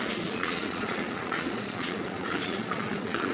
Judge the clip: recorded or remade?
remade